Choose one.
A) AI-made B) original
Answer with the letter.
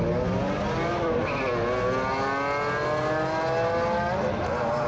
B